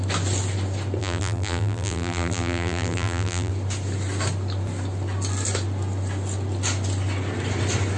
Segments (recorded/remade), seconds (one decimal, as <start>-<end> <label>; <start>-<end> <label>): 0.0-1.0 recorded; 1.0-3.5 remade; 3.5-8.0 recorded